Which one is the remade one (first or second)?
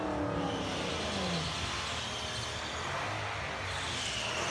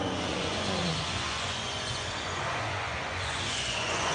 second